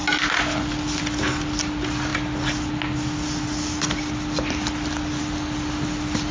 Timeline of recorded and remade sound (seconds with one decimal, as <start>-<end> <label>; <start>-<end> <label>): 0.0-6.3 recorded